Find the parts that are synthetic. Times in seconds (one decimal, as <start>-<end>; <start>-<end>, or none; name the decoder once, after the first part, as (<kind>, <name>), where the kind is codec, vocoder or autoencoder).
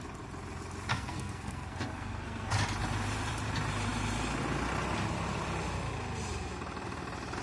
0.9-2.5 (codec, SNAC)